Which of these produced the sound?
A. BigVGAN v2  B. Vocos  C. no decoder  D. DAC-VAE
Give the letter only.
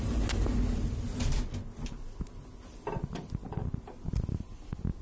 C